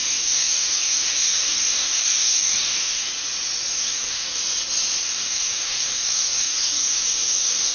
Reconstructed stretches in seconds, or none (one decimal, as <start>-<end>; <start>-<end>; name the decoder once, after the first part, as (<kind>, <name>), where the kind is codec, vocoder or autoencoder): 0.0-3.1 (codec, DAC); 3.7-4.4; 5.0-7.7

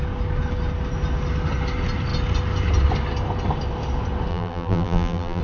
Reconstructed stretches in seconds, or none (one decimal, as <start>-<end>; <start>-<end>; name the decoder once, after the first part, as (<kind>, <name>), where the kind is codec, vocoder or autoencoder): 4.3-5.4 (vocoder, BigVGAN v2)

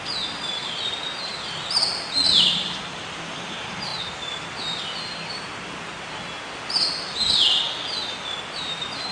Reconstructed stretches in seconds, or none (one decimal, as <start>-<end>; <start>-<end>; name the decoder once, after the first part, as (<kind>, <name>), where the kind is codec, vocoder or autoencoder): 0.0-1.3 (vocoder, BigVGAN v2); 2.4-3.9; 8.5-9.1